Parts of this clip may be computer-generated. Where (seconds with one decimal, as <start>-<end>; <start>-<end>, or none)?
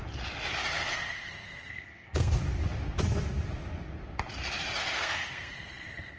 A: 0.9-2.4; 4.8-6.2